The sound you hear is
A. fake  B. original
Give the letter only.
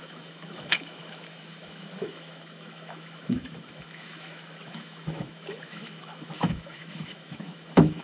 A